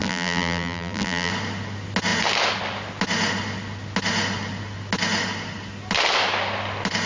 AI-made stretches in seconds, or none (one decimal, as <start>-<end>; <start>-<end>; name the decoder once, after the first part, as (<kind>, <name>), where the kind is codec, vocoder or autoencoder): 0.0-1.3 (vocoder, BigVGAN v2)